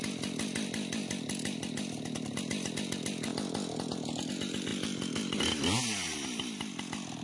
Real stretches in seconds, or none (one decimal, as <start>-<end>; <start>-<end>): 0.0-7.2